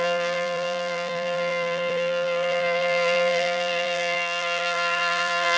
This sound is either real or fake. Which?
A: fake